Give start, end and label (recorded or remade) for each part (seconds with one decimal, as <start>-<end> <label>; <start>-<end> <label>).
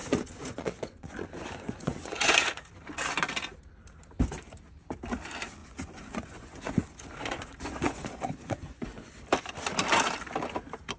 0.0-2.7 remade; 2.7-5.6 recorded; 5.6-9.1 remade; 9.1-11.0 recorded